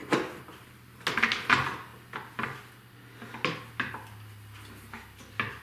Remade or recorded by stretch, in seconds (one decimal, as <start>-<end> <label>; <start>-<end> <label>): 0.0-5.6 recorded